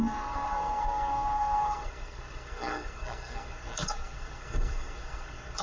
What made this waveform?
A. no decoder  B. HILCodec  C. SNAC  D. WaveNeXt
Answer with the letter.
C